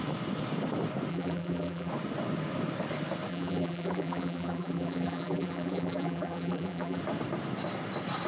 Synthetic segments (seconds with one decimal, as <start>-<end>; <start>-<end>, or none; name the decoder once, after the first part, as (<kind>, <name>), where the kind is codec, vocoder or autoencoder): 1.1-1.9 (vocoder, BigVGAN v2); 3.3-7.0